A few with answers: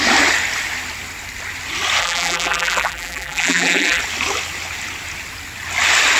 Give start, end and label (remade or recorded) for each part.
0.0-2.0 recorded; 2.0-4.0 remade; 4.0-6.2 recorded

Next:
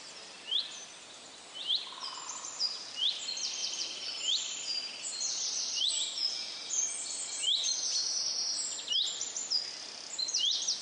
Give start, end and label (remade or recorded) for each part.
0.0-3.6 recorded; 3.6-8.9 remade; 8.9-10.8 recorded

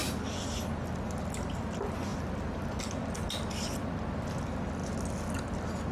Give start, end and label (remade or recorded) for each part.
0.0-4.8 remade; 4.8-5.5 recorded; 5.5-5.9 remade

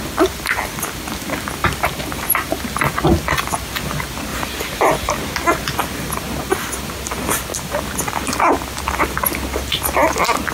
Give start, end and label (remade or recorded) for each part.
0.0-1.6 recorded; 1.6-2.6 remade; 2.6-4.3 recorded; 4.3-5.1 remade; 5.1-10.5 recorded